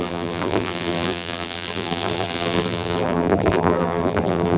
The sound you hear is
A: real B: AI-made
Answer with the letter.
B